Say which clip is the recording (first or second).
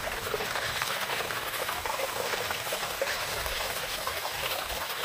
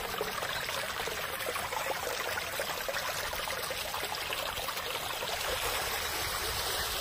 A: second